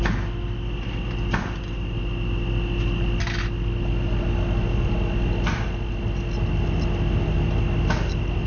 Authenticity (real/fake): real